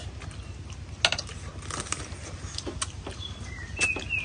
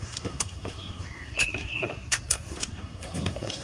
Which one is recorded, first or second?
first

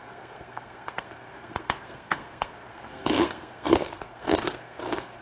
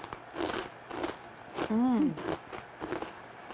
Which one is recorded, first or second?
second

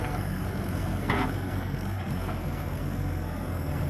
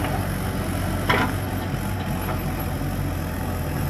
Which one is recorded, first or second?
second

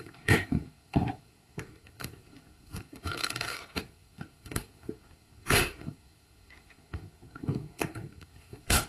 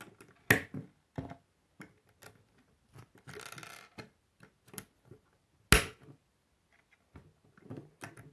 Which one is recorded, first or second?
second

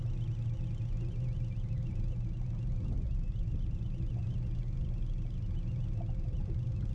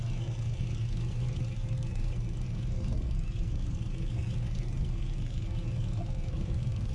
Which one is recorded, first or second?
first